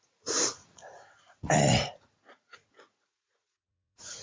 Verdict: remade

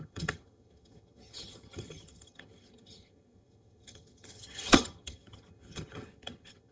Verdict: remade